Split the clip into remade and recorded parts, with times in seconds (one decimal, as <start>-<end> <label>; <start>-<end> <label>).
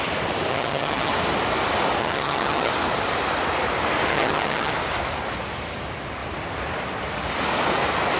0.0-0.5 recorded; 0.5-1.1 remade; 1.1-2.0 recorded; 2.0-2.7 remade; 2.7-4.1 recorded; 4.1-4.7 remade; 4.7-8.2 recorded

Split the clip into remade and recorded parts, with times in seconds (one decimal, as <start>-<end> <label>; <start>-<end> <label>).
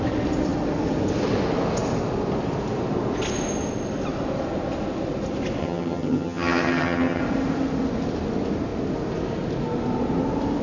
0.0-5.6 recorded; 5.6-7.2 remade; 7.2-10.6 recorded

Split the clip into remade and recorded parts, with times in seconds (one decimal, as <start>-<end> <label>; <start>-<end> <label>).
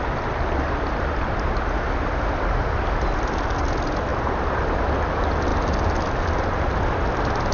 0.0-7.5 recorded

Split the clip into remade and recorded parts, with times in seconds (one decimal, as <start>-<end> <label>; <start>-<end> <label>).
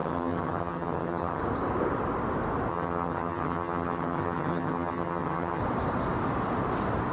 0.0-1.4 remade; 1.4-2.7 recorded; 2.7-5.6 remade; 5.6-7.1 recorded